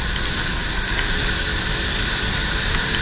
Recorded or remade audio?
recorded